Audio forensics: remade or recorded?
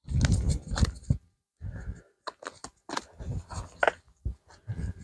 recorded